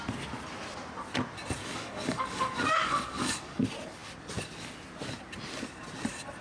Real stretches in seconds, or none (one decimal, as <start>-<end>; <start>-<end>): 0.0-1.6; 3.6-6.4